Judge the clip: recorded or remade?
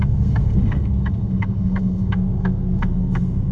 remade